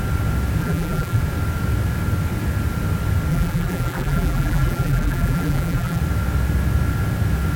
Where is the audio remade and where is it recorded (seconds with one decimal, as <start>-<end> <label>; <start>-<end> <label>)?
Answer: 0.0-0.6 recorded; 0.6-1.2 remade; 1.2-3.3 recorded; 3.3-6.0 remade; 6.0-7.6 recorded

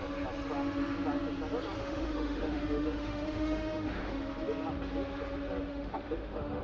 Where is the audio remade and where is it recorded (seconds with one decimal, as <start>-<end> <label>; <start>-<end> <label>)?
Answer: 0.0-1.8 recorded; 1.8-4.2 remade; 4.2-5.7 recorded; 5.7-6.6 remade